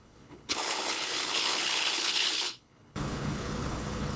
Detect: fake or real fake